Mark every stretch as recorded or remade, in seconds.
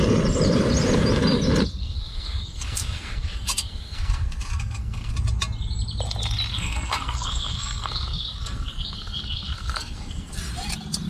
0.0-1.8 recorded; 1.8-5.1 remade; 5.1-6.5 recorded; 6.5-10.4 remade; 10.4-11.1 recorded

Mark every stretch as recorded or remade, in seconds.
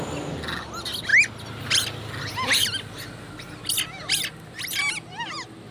0.0-5.7 recorded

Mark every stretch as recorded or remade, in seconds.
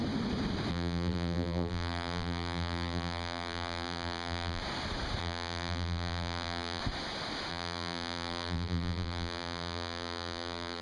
0.0-0.7 recorded; 0.7-4.6 remade; 4.6-5.2 recorded; 5.2-6.8 remade; 6.8-7.5 recorded; 7.5-10.8 remade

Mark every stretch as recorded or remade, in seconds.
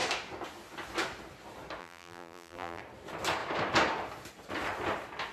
0.0-1.8 recorded; 1.8-2.8 remade; 2.8-5.3 recorded